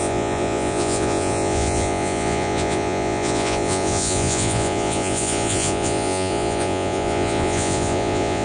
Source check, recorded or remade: remade